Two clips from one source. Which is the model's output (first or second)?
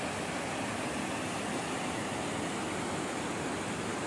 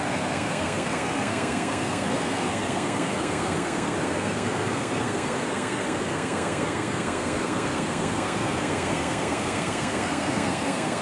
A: second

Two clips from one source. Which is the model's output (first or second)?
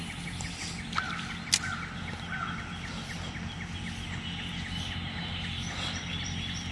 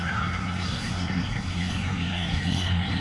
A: second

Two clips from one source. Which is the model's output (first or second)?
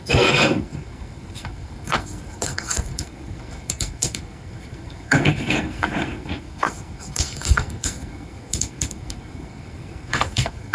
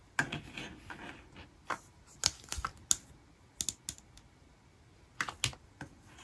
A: first